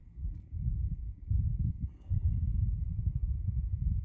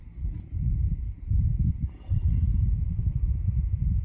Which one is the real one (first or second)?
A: second